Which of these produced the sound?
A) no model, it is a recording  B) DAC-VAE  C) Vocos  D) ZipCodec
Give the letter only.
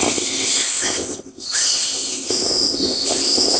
D